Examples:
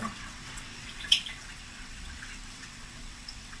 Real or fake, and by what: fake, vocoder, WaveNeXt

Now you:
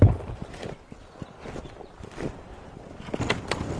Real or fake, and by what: real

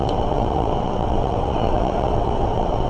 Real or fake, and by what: fake, vocoder, WaveNeXt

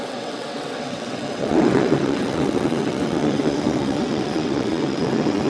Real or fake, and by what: fake, vocoder, WaveNeXt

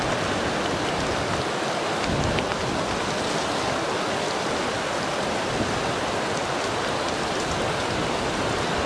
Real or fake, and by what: real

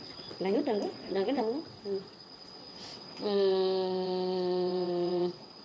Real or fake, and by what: fake, vocoder, WaveNeXt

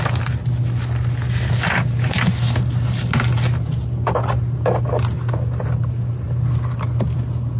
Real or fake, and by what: real